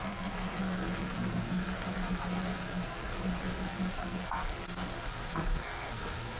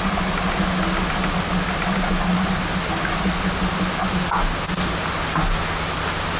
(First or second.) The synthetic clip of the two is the first